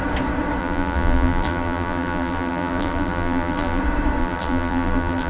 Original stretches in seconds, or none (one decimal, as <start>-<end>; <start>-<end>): 0.0-0.6; 3.8-4.2